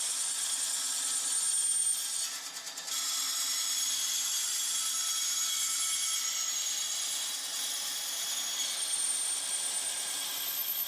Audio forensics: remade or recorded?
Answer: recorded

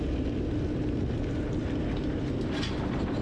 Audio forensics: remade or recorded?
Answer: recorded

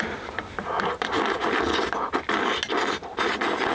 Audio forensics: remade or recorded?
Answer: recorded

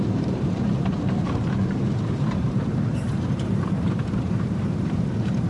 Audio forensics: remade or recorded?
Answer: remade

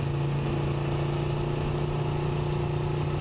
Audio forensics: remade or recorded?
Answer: recorded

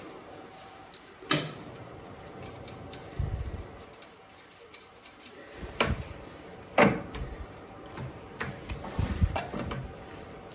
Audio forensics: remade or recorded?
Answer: remade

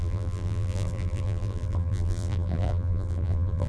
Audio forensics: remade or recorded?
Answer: remade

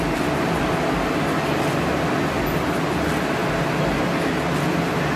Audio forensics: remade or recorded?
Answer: recorded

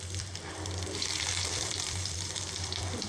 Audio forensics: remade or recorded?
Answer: remade